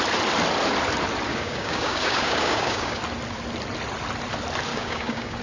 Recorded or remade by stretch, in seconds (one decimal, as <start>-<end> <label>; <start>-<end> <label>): 0.0-1.3 recorded; 1.3-3.0 remade; 3.0-4.7 recorded; 4.7-5.4 remade